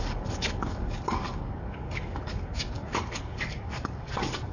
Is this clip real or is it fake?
fake